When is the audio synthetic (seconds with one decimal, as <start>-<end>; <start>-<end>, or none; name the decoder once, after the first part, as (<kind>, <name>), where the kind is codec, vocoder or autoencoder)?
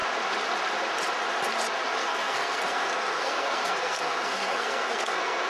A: 2.0-5.5 (codec, SNAC)